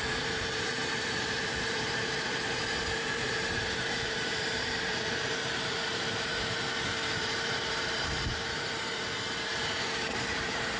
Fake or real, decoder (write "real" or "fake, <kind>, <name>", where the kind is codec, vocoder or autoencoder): fake, vocoder, BigVGAN v2